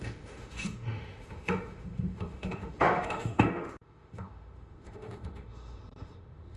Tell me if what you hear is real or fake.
fake